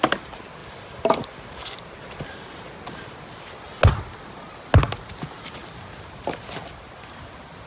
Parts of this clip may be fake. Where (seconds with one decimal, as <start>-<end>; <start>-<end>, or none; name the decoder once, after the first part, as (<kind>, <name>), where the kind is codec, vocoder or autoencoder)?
none